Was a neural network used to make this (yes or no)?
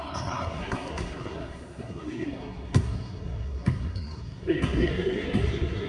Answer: yes